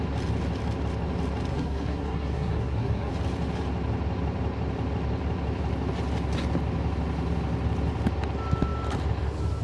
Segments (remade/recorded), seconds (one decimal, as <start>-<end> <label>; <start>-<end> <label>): 0.0-1.5 recorded; 1.5-3.1 remade; 3.1-9.6 recorded

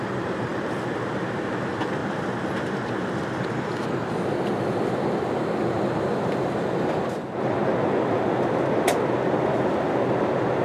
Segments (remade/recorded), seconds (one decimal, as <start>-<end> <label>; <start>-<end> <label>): 0.0-10.6 recorded

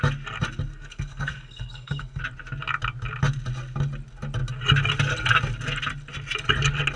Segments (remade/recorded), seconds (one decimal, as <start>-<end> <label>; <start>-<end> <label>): 0.0-0.7 recorded; 0.7-2.2 remade; 2.2-7.0 recorded

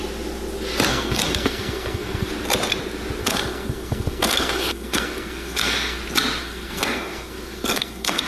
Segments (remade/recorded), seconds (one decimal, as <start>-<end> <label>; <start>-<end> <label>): 0.0-0.9 recorded; 0.9-2.3 remade; 2.3-3.2 recorded; 3.2-6.0 remade; 6.0-6.4 recorded; 6.4-8.3 remade

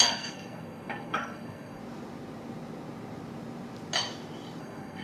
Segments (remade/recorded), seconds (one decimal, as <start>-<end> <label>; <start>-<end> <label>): 0.0-1.8 remade; 1.8-4.6 recorded; 4.6-5.0 remade

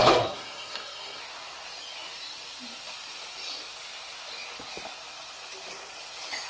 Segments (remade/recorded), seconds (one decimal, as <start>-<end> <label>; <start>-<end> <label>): 0.0-1.2 remade; 1.2-6.5 recorded

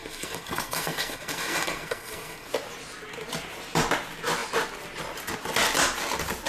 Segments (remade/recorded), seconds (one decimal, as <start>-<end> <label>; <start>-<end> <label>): 0.0-2.5 remade; 2.5-6.5 recorded